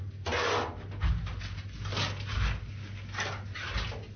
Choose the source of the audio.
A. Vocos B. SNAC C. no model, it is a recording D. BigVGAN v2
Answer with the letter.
C